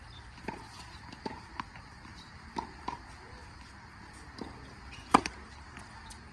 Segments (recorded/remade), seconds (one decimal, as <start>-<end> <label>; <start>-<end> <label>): 0.0-6.3 remade